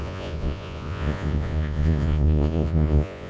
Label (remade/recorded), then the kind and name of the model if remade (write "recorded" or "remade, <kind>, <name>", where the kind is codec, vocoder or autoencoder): remade, vocoder, Vocos